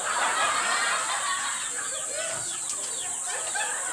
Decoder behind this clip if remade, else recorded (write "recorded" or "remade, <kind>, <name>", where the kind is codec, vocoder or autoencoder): recorded